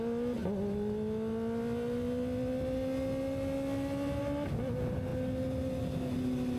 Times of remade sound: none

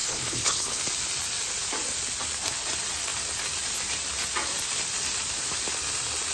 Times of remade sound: 0.0-0.8 (codec, HILCodec)